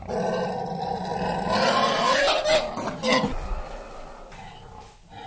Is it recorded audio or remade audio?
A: recorded